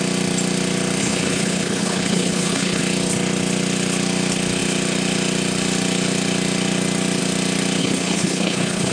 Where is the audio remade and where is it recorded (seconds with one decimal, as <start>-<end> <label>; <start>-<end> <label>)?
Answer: 0.0-1.0 recorded; 1.0-2.8 remade; 2.8-7.8 recorded; 7.8-8.9 remade